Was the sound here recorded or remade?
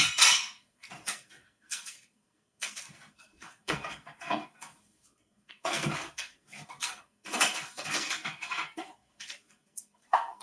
remade